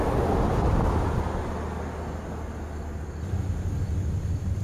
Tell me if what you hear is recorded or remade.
recorded